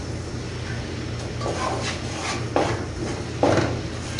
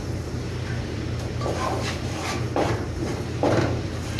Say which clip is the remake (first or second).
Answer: second